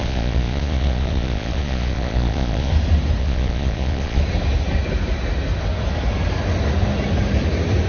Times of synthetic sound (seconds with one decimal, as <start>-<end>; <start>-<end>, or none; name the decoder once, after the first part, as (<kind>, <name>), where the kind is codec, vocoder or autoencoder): 0.0-2.7 (vocoder, Vocos); 3.2-4.2